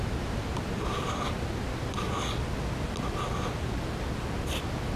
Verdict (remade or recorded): recorded